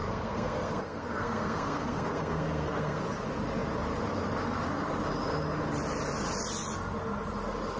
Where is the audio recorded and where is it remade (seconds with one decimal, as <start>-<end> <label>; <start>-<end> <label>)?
0.0-3.0 remade; 3.0-7.8 recorded

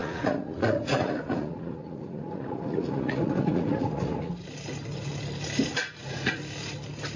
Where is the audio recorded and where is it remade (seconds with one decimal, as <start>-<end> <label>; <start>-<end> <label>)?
0.0-4.3 remade; 4.3-5.7 recorded; 5.7-6.4 remade; 6.4-7.2 recorded

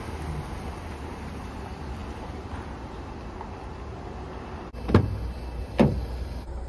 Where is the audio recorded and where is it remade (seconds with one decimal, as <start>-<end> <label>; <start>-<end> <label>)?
0.0-6.7 recorded